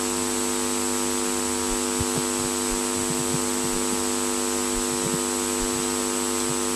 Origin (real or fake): real